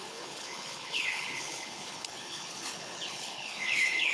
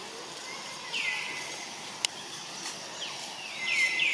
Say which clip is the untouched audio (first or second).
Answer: second